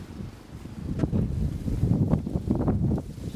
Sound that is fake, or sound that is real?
real